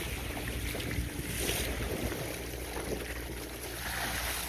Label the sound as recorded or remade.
recorded